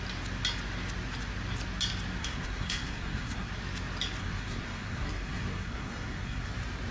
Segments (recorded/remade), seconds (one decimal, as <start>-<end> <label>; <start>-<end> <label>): 0.0-2.2 recorded; 2.2-3.5 remade; 3.5-4.2 recorded; 4.2-6.5 remade; 6.5-6.9 recorded